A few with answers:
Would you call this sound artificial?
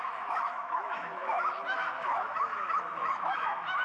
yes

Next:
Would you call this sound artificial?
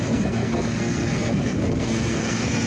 yes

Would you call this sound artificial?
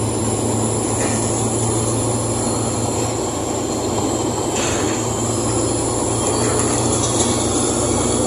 no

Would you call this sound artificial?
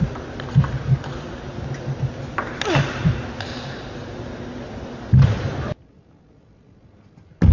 no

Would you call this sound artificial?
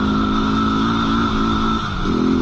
no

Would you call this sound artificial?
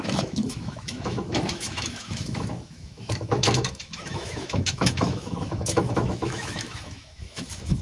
yes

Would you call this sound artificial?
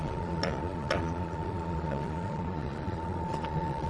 yes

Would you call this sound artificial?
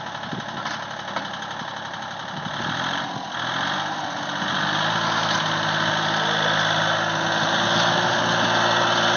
no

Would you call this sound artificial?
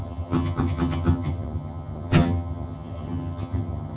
yes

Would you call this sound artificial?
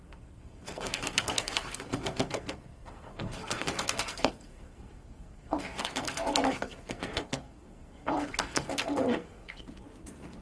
yes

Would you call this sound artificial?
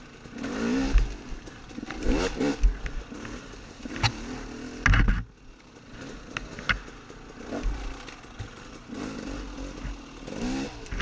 no